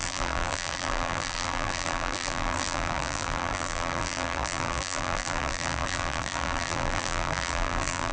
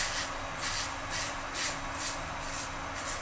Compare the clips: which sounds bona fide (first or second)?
second